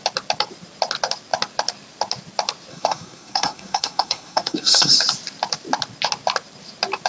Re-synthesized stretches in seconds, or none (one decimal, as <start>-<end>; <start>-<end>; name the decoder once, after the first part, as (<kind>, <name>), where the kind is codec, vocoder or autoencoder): 2.7-4.9 (codec, SNAC)